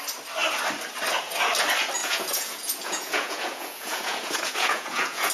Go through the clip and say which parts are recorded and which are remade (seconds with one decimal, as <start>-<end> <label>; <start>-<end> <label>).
0.0-2.0 recorded; 2.0-5.3 remade